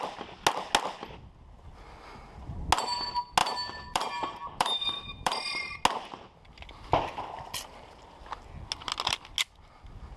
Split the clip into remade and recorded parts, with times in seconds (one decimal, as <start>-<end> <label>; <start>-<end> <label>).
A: 0.0-3.4 recorded; 3.4-5.8 remade; 5.8-10.2 recorded